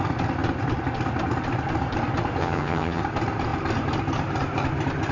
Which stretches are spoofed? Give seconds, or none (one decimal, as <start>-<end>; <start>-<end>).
2.4-3.0